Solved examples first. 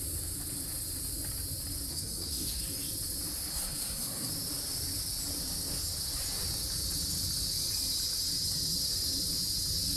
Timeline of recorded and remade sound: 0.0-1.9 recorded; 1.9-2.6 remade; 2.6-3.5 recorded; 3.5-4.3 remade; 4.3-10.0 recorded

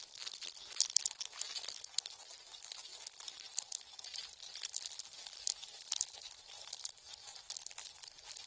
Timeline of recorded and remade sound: 0.0-1.0 recorded; 1.0-2.3 remade; 2.3-2.9 recorded; 2.9-8.0 remade; 8.0-8.5 recorded

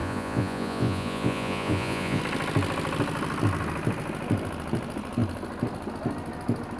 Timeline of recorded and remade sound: 0.0-2.2 remade; 2.2-6.8 recorded

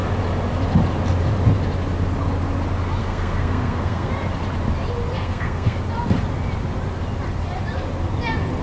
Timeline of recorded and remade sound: 0.0-3.0 recorded; 3.0-4.1 remade; 4.1-5.1 recorded; 5.1-5.8 remade; 5.8-8.6 recorded

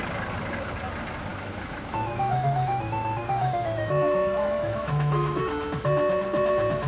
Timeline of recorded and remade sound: 0.0-1.3 recorded; 1.3-5.4 remade; 5.4-6.9 recorded